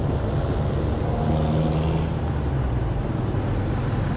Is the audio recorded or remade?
recorded